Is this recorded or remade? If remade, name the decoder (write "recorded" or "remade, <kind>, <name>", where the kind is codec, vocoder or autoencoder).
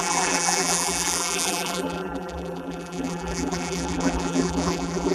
remade, vocoder, BigVGAN v2